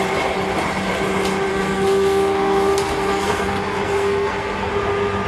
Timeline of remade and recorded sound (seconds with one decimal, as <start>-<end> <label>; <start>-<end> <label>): 0.0-1.5 recorded; 1.5-4.7 remade; 4.7-5.3 recorded